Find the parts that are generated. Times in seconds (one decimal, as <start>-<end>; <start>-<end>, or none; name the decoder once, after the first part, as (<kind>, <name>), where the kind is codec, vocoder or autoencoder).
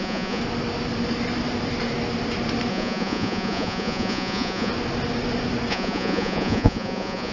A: 0.0-0.4 (vocoder, Vocos); 2.7-4.7; 5.7-7.3